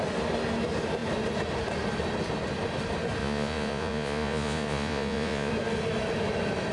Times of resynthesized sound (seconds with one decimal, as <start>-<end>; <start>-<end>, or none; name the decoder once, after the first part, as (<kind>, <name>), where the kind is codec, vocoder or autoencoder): 3.2-5.5 (vocoder, Vocos)

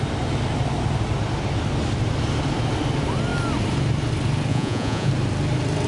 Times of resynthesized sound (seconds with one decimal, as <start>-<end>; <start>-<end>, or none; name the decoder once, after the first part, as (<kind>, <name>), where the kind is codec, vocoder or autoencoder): 4.5-5.1 (vocoder, Vocos)

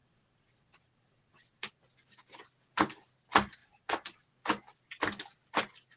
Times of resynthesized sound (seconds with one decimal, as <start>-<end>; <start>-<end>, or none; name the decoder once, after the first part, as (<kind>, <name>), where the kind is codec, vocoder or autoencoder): 0.0-1.8 (vocoder, Vocos); 3.6-4.2

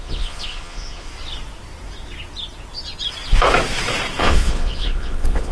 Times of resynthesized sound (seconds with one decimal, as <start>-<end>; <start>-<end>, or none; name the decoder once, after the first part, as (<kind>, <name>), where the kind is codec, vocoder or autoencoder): 0.0-1.1 (vocoder, Vocos); 4.2-5.5

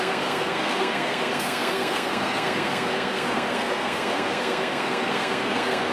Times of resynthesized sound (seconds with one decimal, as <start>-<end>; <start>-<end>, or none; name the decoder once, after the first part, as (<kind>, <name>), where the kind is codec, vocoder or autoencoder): 0.0-5.9 (codec, SNAC)

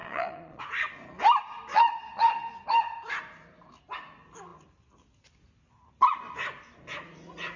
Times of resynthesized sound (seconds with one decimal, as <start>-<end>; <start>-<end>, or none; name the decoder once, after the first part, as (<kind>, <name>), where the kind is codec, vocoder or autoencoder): 0.0-0.6 (vocoder, Vocos); 1.7-2.3

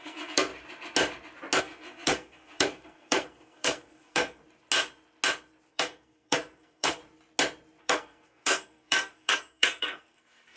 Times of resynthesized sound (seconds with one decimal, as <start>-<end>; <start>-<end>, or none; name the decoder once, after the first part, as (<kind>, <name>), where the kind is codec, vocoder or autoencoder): 0.0-0.5 (codec, SNAC); 1.6-4.4; 5.7-7.0; 7.8-10.6

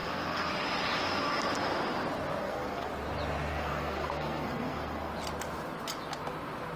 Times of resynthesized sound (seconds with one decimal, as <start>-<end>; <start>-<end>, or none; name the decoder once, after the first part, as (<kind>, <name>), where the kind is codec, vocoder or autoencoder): 0.0-0.5 (codec, SNAC); 2.4-2.9; 3.5-5.1